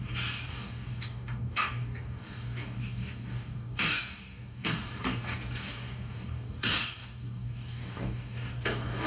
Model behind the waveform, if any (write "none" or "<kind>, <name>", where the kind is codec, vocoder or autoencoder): codec, DAC